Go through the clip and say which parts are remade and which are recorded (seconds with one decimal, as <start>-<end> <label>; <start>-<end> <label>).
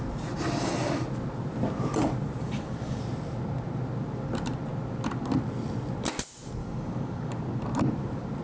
0.0-2.4 recorded; 2.4-3.0 remade; 3.0-6.6 recorded; 6.6-7.3 remade; 7.3-8.4 recorded